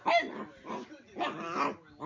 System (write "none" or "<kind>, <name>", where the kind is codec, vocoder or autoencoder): none